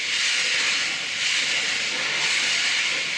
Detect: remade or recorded recorded